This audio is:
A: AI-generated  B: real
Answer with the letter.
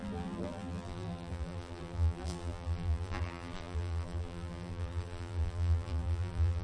A